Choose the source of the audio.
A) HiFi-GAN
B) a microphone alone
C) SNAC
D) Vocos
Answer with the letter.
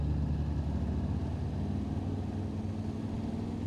B